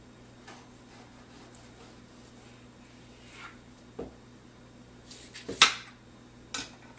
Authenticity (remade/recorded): recorded